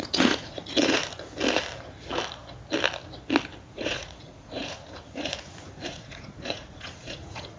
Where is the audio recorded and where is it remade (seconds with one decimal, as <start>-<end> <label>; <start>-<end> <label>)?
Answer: 0.0-1.0 remade; 1.0-3.7 recorded; 3.7-7.6 remade